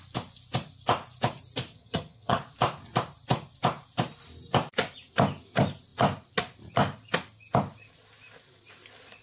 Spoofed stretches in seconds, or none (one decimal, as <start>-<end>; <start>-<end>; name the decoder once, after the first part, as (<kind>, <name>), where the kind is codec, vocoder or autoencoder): 1.7-2.4 (vocoder, HiFi-GAN)